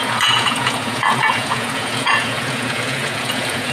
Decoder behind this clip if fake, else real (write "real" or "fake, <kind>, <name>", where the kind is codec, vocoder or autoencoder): fake, vocoder, Vocos